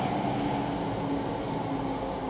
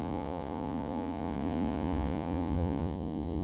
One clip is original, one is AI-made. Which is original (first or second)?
first